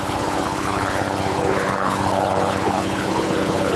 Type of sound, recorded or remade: remade